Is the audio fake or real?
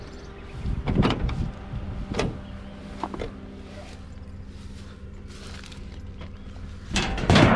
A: real